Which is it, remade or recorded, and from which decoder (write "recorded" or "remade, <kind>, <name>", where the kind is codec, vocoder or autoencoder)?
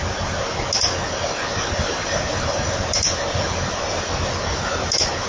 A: recorded